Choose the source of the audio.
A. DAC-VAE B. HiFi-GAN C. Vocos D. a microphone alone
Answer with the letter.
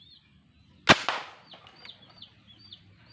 D